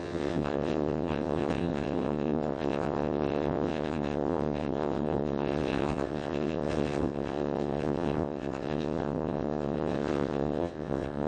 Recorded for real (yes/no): no